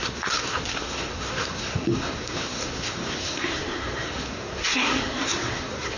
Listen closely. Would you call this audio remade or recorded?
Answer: remade